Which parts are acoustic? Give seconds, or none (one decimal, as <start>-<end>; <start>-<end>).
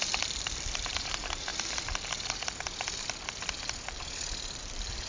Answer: 1.5-4.6